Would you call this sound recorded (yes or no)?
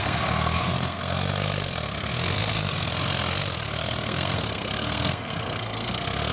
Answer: no